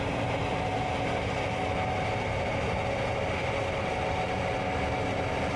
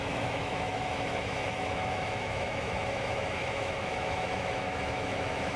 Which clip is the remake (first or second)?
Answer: second